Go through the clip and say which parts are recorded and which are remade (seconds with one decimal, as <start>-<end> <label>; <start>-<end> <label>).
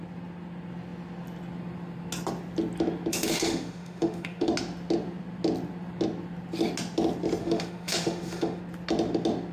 0.0-3.1 recorded; 3.1-4.5 remade; 4.5-7.4 recorded; 7.4-8.6 remade; 8.6-9.5 recorded